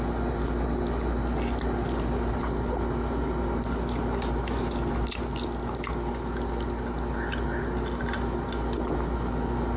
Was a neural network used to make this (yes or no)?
no